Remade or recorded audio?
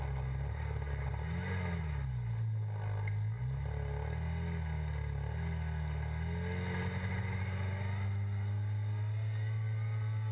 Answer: recorded